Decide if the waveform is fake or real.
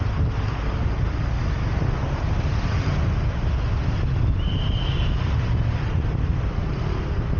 real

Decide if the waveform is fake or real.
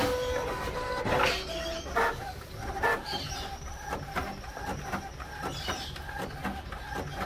real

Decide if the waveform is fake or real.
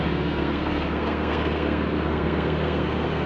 fake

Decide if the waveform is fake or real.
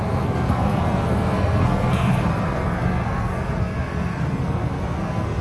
fake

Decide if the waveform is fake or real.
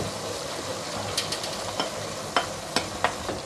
real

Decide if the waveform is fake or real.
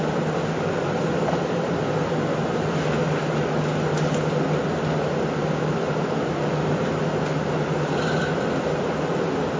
real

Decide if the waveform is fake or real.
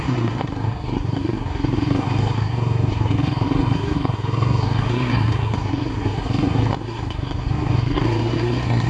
fake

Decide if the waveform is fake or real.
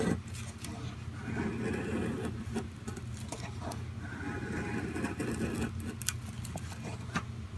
real